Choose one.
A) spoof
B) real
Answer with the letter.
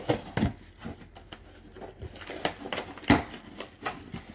B